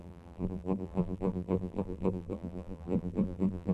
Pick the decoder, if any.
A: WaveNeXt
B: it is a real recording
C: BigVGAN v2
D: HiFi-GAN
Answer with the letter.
C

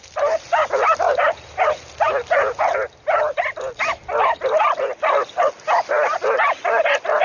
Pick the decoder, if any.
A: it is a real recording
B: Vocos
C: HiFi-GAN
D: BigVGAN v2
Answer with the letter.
A